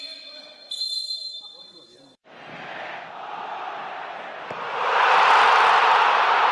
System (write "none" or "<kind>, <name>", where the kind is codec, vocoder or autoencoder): none